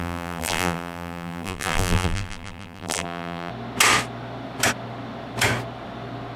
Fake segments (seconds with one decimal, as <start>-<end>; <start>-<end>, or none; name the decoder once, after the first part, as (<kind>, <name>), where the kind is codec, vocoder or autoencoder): 0.0-3.5 (vocoder, BigVGAN v2)